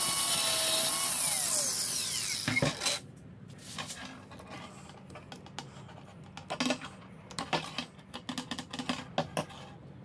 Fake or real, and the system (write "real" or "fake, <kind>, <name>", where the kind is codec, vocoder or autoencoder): real